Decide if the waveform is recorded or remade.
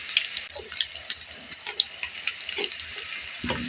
recorded